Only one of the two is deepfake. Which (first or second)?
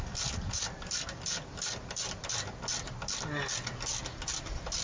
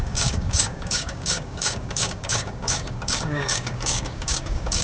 second